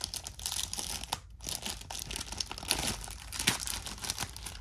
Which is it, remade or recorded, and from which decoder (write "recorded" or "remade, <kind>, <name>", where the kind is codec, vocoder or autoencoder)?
recorded